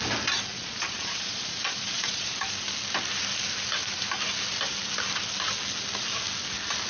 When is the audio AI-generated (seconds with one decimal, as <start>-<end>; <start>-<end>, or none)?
0.5-2.5